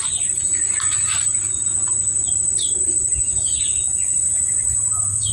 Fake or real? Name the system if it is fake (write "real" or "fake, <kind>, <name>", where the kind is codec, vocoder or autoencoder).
real